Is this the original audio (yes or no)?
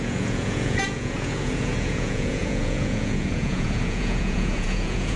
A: no